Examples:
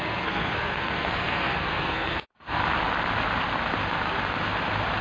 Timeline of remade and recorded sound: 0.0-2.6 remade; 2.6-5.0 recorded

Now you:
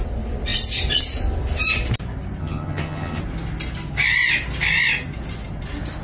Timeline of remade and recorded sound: 0.0-2.4 recorded; 2.4-3.2 remade; 3.2-6.0 recorded

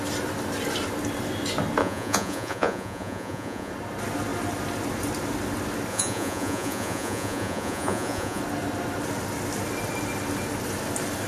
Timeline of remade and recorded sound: 0.0-1.8 recorded; 1.8-3.7 remade; 3.7-5.9 recorded; 5.9-8.4 remade; 8.4-11.3 recorded

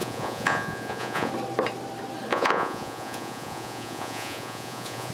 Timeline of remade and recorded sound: 0.0-1.3 remade; 1.3-2.3 recorded; 2.3-5.1 remade

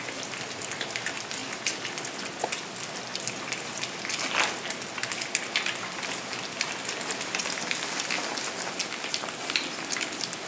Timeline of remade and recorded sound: 0.0-10.5 recorded

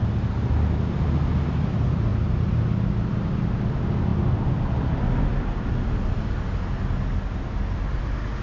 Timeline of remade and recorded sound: 0.0-8.4 recorded